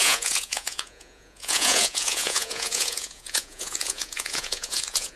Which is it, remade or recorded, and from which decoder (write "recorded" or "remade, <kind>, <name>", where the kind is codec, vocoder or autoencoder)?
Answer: remade, vocoder, Vocos